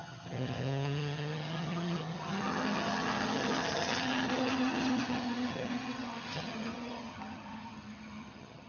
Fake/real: fake